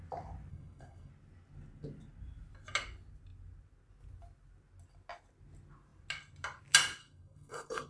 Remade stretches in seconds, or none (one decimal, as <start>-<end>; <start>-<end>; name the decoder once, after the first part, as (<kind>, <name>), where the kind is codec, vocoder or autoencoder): 0.5-1.1 (codec, SNAC); 7.0-7.9